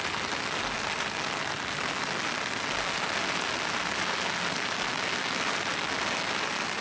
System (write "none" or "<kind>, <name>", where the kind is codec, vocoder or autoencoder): none